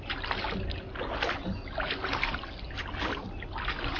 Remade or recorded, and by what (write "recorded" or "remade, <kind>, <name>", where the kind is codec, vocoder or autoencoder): recorded